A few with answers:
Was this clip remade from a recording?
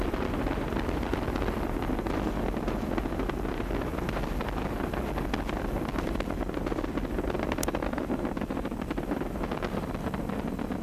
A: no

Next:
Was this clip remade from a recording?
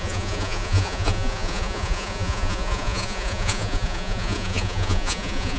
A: yes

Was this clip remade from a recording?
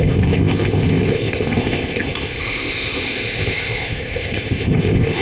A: yes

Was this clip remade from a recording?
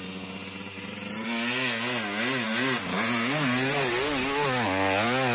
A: no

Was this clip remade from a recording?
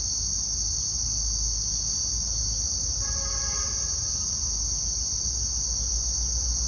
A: no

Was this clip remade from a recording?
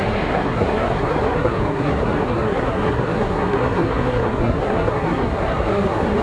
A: yes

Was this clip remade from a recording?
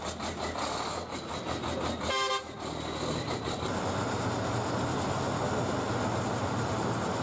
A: no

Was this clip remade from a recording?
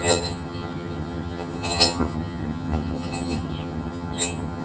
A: yes